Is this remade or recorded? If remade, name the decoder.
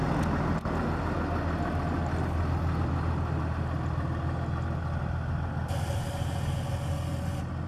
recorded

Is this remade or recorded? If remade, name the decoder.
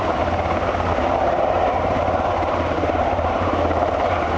remade, vocoder, BigVGAN v2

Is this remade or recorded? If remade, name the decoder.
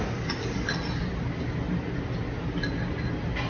recorded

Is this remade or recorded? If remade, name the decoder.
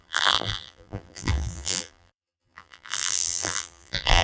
remade, vocoder, BigVGAN v2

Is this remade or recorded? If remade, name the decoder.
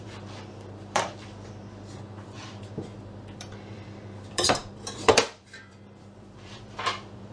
remade, vocoder, BigVGAN v2